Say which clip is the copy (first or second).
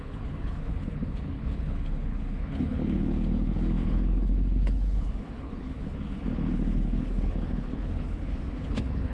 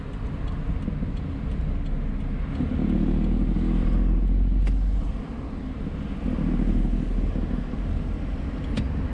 first